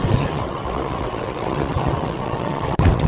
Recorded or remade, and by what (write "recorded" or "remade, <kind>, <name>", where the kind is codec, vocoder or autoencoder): remade, vocoder, WaveNeXt